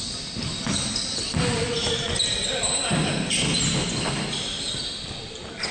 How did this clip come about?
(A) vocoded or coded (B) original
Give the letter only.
B